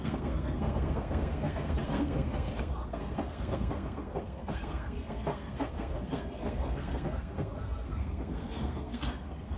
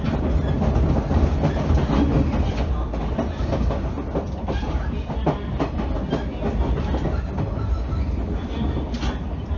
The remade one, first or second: first